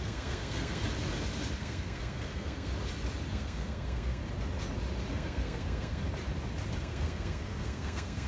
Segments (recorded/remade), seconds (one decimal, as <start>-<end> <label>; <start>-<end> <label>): 0.0-0.8 remade; 0.8-1.6 recorded; 1.6-2.7 remade; 2.7-3.3 recorded; 3.3-4.2 remade; 4.2-5.1 recorded; 5.1-6.0 remade; 6.0-6.8 recorded; 6.8-8.3 remade